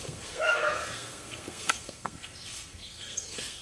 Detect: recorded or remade remade